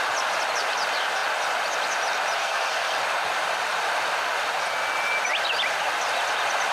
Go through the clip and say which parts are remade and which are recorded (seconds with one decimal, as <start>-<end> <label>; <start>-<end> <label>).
0.0-2.4 recorded; 2.4-3.0 remade; 3.0-6.7 recorded